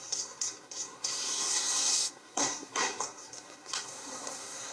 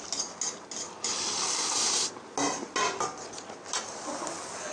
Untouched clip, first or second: second